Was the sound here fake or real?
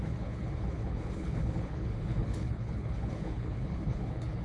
fake